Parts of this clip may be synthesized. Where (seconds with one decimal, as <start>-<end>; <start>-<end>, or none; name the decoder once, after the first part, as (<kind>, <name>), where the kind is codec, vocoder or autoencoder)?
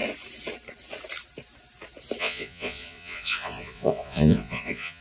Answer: 2.2-5.0 (vocoder, Vocos)